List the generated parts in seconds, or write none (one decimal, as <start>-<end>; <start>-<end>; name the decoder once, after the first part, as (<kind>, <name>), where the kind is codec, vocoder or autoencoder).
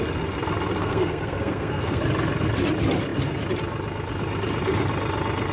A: 0.8-2.0 (codec, SNAC)